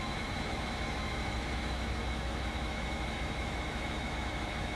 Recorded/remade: remade